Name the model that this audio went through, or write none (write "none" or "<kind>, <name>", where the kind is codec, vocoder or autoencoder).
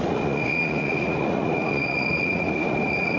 vocoder, Vocos